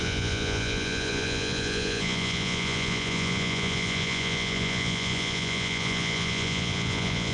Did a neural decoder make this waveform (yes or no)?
yes